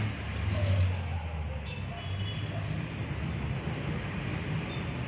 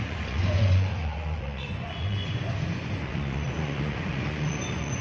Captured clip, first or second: first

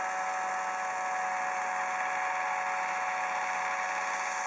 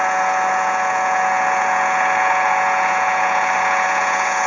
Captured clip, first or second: first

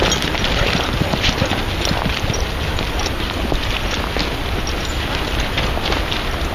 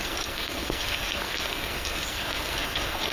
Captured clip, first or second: first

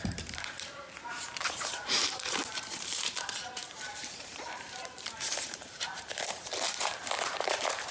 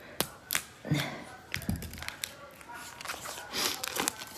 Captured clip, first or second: second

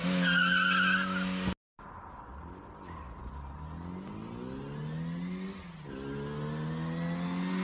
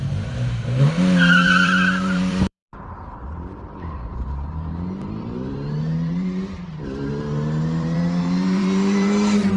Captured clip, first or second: first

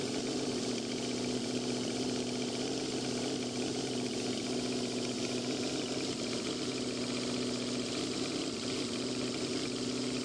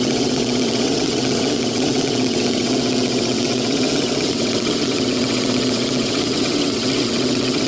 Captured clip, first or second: first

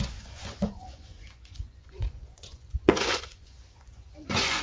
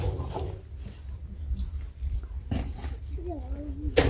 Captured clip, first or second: second